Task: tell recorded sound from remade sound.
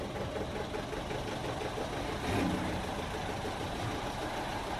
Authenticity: recorded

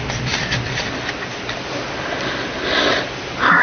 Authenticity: recorded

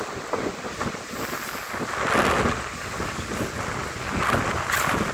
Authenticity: recorded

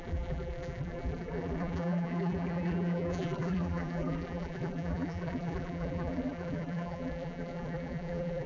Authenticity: remade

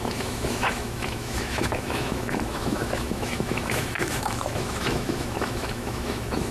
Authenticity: remade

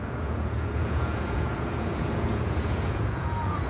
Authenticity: remade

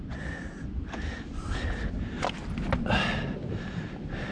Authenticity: recorded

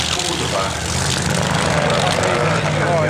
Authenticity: recorded